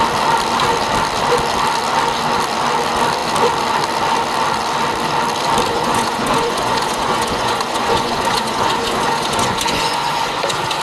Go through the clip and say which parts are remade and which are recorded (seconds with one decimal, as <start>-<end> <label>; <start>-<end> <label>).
0.0-5.7 recorded; 5.7-10.8 remade

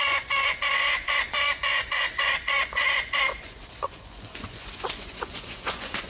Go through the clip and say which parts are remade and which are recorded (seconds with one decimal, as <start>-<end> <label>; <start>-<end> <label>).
0.0-6.1 remade

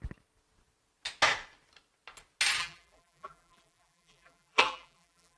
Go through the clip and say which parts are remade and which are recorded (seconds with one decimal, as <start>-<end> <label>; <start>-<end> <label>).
0.0-2.6 recorded; 2.6-5.4 remade

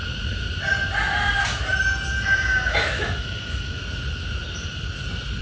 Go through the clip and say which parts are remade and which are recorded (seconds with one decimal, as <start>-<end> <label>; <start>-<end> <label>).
0.0-2.7 recorded; 2.7-3.8 remade; 3.8-5.4 recorded

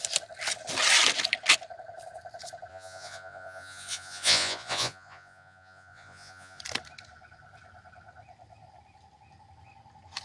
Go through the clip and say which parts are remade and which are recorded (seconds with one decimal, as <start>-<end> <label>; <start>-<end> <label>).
0.0-2.7 recorded; 2.7-6.6 remade; 6.6-10.2 recorded

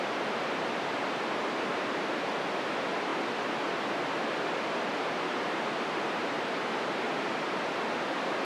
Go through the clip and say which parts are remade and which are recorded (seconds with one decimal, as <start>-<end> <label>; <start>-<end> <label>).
0.0-8.4 recorded

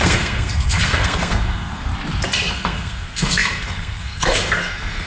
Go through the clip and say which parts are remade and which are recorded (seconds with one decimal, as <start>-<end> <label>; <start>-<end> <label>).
0.0-1.9 remade; 1.9-2.5 recorded; 2.5-5.1 remade